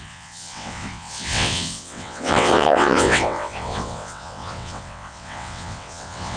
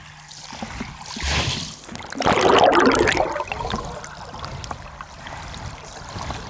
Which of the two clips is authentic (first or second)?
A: second